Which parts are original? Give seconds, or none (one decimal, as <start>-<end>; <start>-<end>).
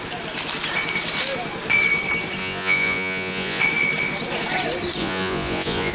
0.0-2.4; 3.6-5.0